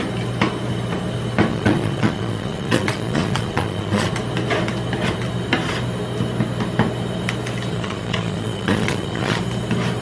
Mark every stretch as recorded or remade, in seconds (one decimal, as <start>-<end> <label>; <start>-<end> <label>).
0.0-1.5 recorded; 1.5-4.1 remade; 4.1-7.7 recorded; 7.7-9.4 remade; 9.4-10.0 recorded